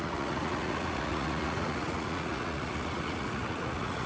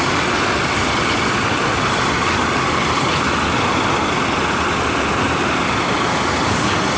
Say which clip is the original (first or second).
second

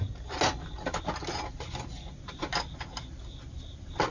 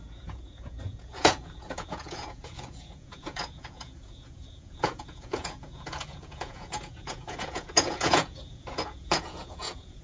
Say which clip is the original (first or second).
first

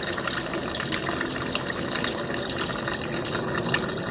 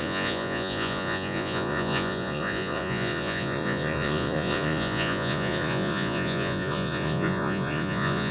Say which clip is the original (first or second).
first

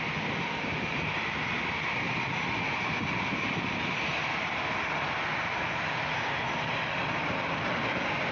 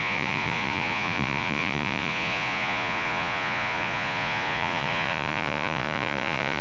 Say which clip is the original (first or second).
first